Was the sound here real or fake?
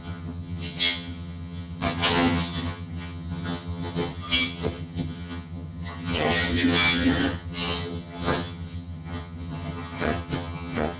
fake